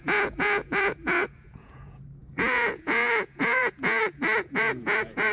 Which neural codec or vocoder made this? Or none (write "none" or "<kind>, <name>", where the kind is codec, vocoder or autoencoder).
vocoder, Vocos